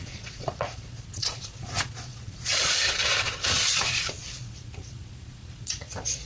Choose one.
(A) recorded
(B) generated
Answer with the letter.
B